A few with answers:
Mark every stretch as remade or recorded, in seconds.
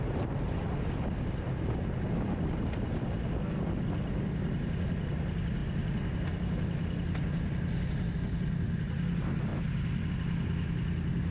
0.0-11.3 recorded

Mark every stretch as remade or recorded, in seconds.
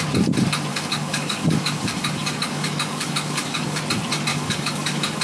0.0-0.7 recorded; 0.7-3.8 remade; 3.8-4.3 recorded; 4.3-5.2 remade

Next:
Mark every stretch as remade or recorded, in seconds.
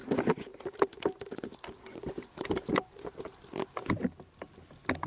0.0-5.1 recorded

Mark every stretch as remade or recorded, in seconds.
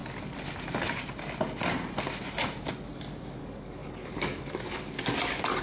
0.0-3.4 recorded; 3.4-5.6 remade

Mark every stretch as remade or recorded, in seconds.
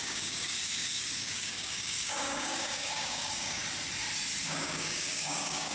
0.0-3.6 remade; 3.6-4.4 recorded; 4.4-5.7 remade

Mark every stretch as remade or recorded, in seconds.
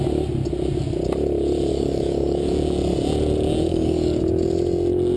0.0-1.7 recorded; 1.7-2.5 remade; 2.5-3.7 recorded; 3.7-4.2 remade; 4.2-5.2 recorded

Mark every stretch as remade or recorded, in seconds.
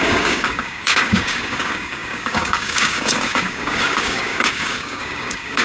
0.0-5.6 remade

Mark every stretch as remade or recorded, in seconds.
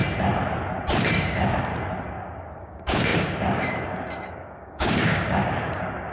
0.0-1.1 recorded; 1.1-1.7 remade; 1.7-2.6 recorded; 2.6-6.1 remade